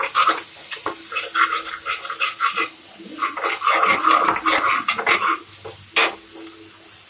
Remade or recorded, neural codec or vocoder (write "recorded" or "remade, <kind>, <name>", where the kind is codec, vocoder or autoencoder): recorded